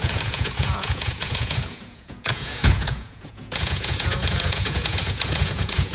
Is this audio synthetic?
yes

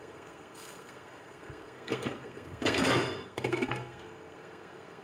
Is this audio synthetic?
yes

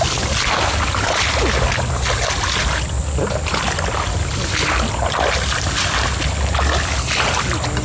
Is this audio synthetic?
no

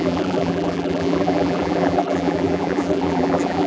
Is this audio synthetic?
yes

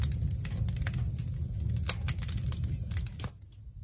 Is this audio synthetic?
no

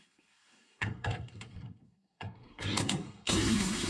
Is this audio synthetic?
yes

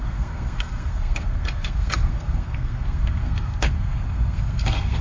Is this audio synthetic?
yes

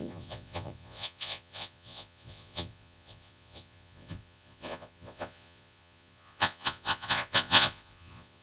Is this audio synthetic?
yes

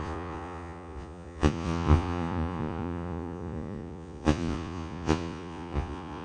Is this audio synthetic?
yes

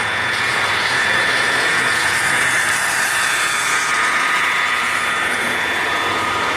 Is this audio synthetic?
yes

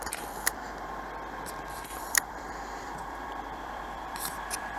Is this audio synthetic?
yes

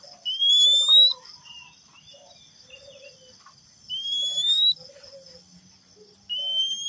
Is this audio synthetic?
no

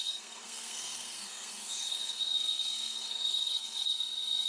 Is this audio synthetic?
yes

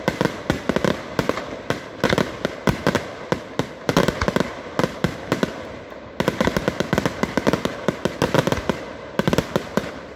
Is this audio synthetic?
no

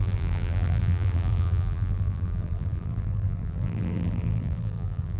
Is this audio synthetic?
yes